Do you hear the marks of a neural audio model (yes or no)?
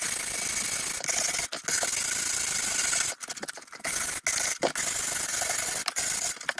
no